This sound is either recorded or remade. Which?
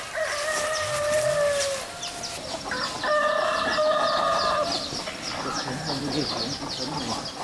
recorded